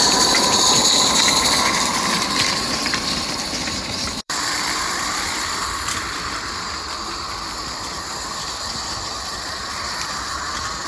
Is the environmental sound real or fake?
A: fake